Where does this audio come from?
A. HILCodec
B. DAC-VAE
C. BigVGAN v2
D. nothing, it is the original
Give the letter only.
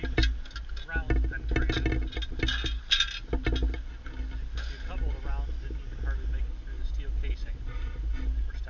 D